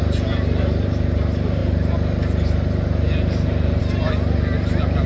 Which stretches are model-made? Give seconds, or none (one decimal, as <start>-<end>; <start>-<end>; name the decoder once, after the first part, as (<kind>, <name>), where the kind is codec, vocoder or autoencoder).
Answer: none